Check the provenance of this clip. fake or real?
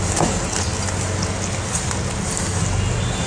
real